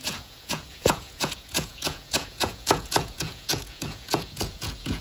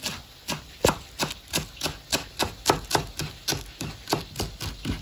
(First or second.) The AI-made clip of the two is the first